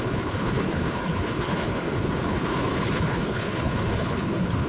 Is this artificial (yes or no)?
yes